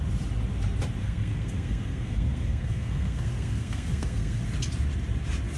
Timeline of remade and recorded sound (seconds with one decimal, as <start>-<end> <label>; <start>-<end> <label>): 0.0-1.0 recorded; 1.0-4.4 remade; 4.4-5.6 recorded